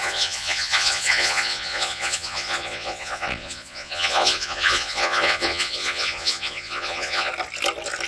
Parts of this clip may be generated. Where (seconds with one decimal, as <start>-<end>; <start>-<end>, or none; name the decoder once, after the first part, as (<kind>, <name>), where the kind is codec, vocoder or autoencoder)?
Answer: 0.0-7.3 (vocoder, Vocos)